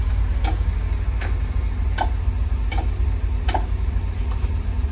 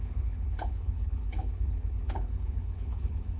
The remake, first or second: second